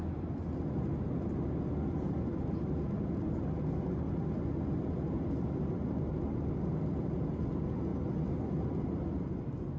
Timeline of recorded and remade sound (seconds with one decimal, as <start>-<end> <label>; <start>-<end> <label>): 0.0-9.8 recorded